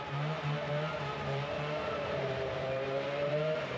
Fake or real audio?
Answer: fake